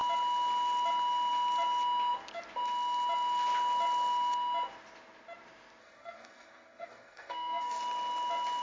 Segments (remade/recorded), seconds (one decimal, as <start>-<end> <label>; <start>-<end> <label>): 0.0-5.8 recorded; 5.8-7.8 remade; 7.8-8.6 recorded